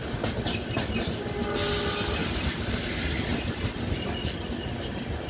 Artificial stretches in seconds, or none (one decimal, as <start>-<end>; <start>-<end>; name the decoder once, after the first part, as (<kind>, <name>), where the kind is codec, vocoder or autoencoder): none